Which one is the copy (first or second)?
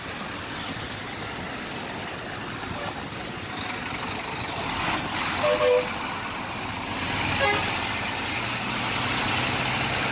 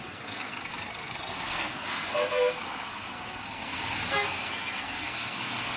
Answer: second